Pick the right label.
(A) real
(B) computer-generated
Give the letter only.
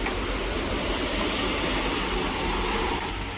A